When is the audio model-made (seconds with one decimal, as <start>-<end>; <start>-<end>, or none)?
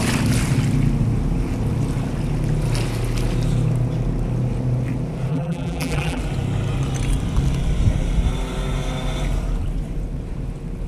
5.3-6.2